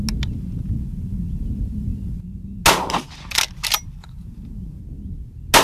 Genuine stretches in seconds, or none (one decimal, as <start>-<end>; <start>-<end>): 0.0-4.0; 4.8-5.6